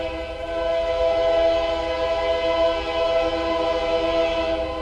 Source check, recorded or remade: recorded